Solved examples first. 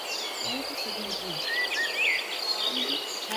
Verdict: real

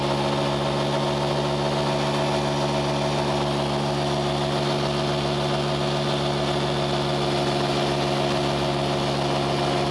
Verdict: real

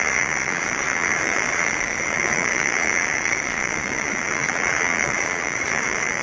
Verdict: fake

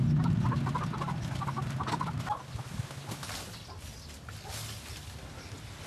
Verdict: real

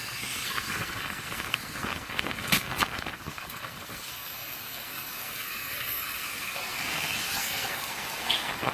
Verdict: fake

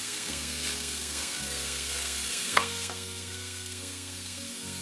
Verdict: fake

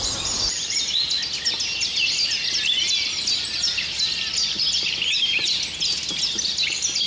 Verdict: real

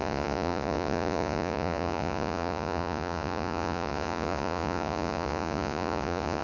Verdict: fake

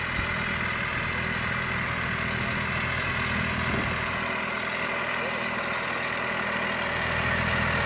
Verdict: real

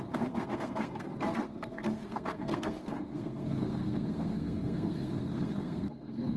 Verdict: fake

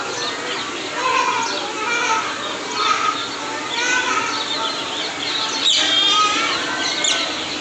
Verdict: real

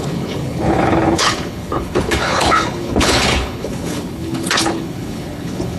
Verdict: fake